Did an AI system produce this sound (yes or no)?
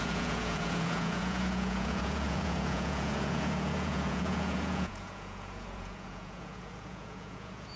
yes